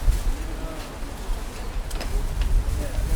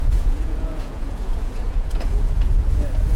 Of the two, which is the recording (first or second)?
first